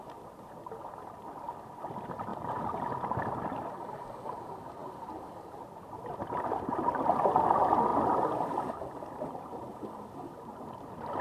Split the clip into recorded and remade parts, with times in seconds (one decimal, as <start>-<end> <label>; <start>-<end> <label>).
0.0-11.2 recorded

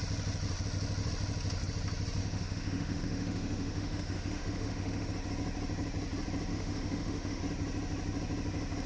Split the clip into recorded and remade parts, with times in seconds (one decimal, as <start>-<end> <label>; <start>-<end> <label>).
0.0-2.2 recorded; 2.2-5.1 remade; 5.1-6.5 recorded; 6.5-7.4 remade; 7.4-8.9 recorded

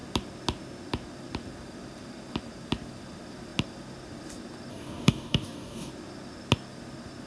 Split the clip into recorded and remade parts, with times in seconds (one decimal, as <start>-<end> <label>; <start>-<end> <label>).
0.0-4.7 recorded; 4.7-5.9 remade; 5.9-7.3 recorded

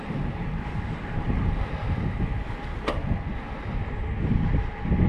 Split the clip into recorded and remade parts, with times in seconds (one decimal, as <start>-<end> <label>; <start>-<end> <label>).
0.0-5.1 recorded

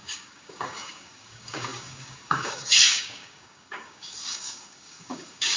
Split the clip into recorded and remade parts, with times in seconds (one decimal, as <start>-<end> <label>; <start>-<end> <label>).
0.0-5.6 remade

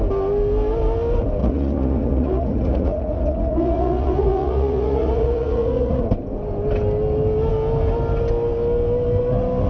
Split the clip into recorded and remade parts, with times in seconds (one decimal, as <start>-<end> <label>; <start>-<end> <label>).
0.0-1.4 recorded; 1.4-6.0 remade; 6.0-9.7 recorded

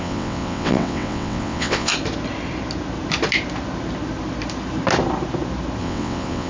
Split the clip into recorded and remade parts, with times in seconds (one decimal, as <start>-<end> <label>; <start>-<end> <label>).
0.0-1.9 remade; 1.9-5.8 recorded; 5.8-6.5 remade

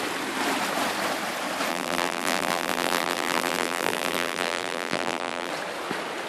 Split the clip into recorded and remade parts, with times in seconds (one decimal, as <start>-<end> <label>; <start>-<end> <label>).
0.0-1.7 recorded; 1.7-5.5 remade; 5.5-6.3 recorded